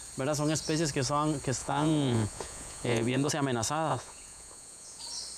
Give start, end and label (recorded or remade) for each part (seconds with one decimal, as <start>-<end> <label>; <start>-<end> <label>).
0.0-1.6 recorded; 1.6-3.3 remade; 3.3-3.9 recorded; 3.9-5.0 remade; 5.0-5.4 recorded